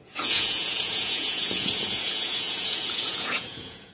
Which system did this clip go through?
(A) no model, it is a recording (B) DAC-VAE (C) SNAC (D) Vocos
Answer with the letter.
D